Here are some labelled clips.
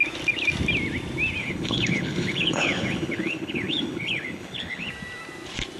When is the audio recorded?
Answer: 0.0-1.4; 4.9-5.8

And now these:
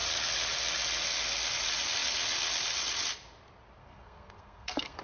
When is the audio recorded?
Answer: 0.0-3.8

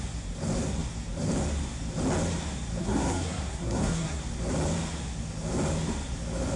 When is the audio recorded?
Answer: 0.0-2.8; 4.2-6.6

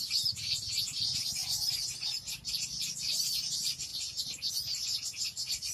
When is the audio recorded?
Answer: 0.0-5.7